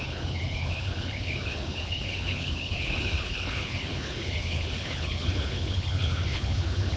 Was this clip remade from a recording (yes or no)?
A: yes